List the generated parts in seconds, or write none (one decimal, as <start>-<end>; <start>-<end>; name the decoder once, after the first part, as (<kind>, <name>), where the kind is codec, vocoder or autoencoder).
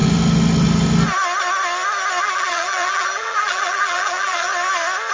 2.2-4.5 (vocoder, BigVGAN v2)